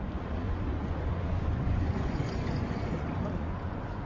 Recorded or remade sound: remade